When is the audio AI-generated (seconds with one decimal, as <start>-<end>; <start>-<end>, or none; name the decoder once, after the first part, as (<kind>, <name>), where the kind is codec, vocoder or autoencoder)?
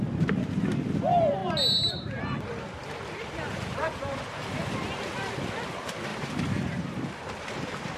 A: 2.8-4.6 (vocoder, BigVGAN v2); 6.1-7.4